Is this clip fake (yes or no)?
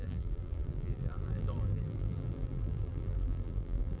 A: yes